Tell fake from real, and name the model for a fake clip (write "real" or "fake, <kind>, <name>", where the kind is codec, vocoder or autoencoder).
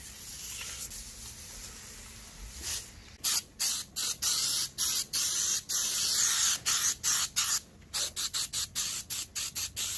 real